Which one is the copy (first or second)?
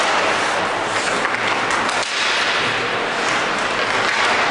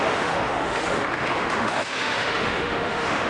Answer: second